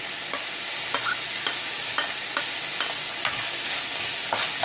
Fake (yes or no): no